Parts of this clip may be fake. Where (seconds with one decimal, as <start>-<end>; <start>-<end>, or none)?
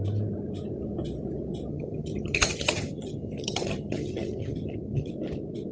1.7-5.1